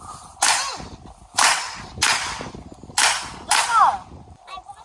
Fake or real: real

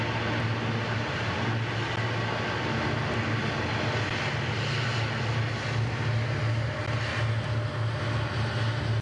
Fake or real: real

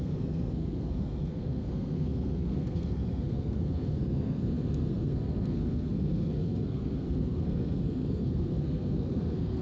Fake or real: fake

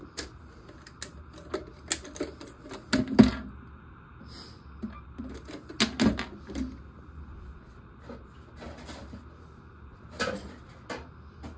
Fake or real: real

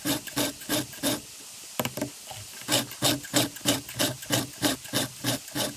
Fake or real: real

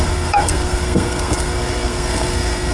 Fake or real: fake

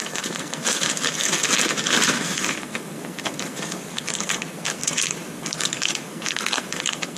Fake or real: fake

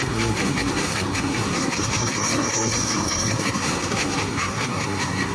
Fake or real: fake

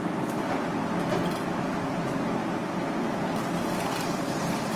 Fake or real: real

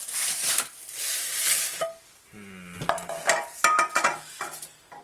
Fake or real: real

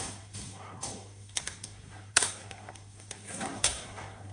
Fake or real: fake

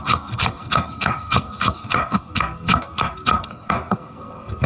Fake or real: fake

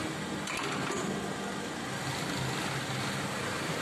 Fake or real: real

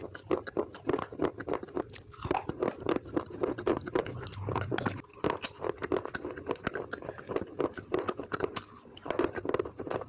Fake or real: real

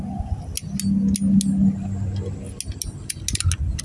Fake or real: real